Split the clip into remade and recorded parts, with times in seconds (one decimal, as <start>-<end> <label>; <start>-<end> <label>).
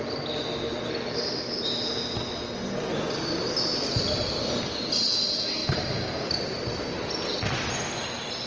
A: 0.0-8.5 recorded